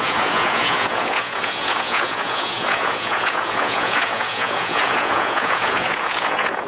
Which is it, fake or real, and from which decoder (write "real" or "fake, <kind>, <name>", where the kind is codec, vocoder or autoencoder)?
fake, vocoder, Vocos